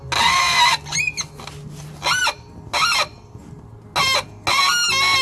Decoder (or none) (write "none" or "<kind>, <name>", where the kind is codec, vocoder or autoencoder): none